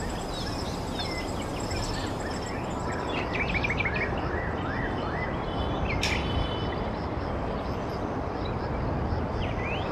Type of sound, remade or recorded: recorded